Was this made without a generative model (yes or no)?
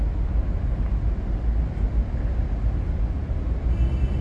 yes